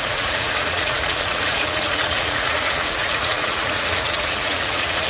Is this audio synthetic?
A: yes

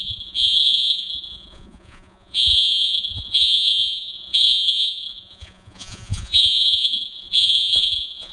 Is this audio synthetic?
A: yes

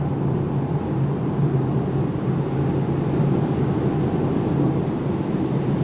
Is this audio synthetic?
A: no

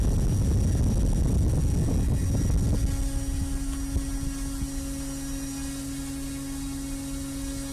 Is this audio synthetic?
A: no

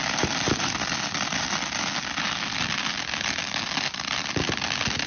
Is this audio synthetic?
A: yes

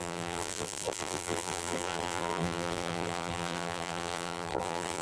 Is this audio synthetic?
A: yes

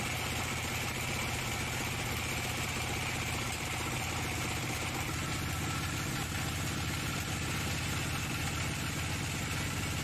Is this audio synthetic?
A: no